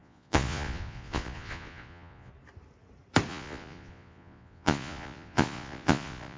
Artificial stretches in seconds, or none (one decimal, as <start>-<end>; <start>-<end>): 0.0-2.3; 3.3-6.4